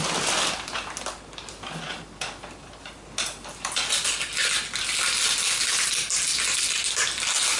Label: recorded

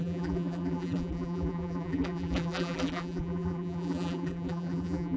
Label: remade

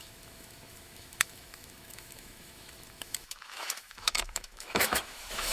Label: remade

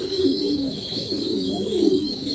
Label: remade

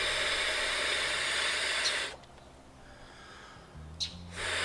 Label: recorded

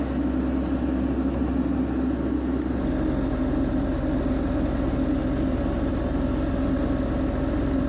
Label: recorded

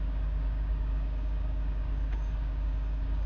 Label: remade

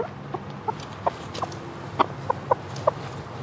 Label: recorded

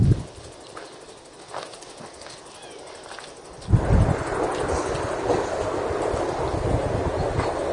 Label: recorded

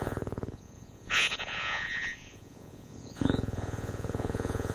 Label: remade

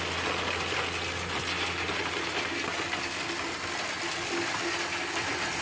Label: recorded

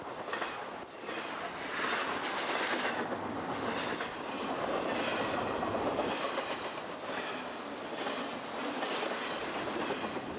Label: recorded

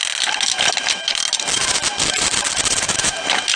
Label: recorded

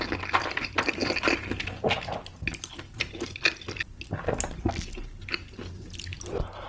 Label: recorded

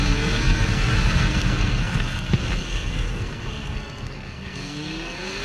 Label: remade